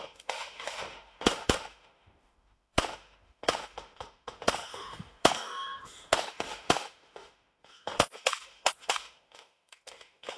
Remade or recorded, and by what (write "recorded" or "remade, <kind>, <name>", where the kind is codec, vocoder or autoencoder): remade, autoencoder, DAC-VAE